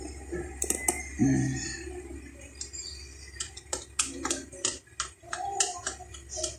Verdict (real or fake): real